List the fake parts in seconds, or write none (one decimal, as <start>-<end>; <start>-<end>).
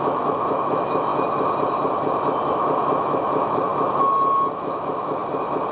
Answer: 0.0-1.1; 2.5-3.7; 4.5-5.2